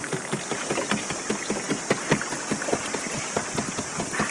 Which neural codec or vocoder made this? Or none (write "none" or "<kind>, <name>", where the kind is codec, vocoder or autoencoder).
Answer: none